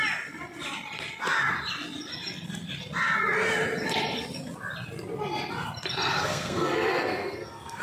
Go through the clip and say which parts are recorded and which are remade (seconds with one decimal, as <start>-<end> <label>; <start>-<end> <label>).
0.0-6.1 recorded; 6.1-7.8 remade